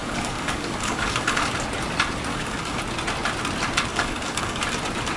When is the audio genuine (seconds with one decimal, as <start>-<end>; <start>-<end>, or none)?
1.5-2.3; 2.8-3.9; 4.6-5.2